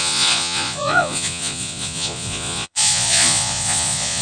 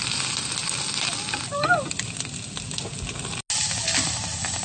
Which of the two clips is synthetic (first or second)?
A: first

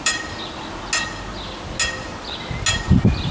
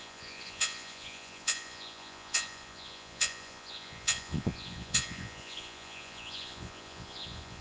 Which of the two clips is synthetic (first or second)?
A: second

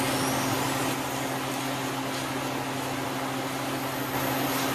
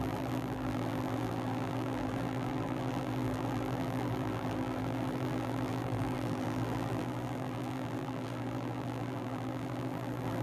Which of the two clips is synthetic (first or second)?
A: second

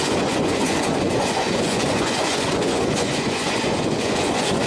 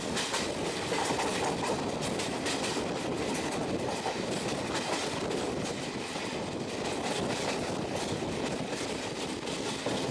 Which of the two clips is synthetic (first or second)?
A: first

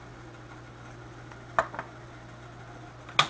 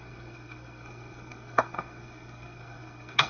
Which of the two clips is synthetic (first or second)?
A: second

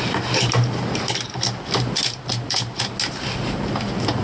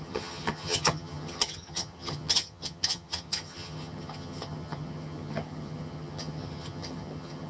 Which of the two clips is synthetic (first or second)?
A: second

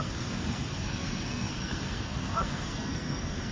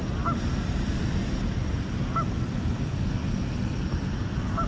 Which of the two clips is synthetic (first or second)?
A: first